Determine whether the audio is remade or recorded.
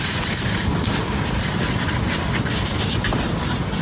recorded